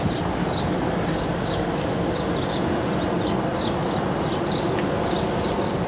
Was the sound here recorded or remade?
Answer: recorded